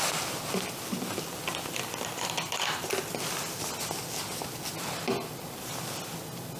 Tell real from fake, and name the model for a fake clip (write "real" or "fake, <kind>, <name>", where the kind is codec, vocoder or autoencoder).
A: real